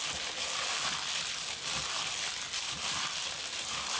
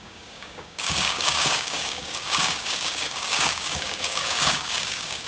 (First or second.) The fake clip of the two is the second